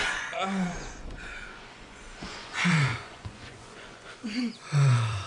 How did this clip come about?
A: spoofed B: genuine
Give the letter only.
A